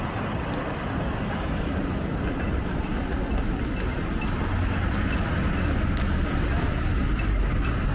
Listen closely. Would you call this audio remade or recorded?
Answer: recorded